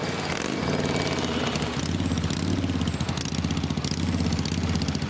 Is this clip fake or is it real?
real